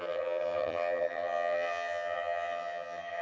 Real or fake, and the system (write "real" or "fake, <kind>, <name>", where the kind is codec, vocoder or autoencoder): fake, vocoder, HiFi-GAN